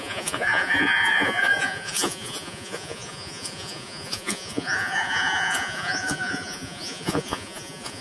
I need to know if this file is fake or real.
fake